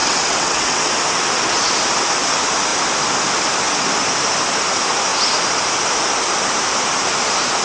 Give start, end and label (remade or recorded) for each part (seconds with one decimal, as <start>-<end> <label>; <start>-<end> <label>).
0.0-0.9 remade; 0.9-7.6 recorded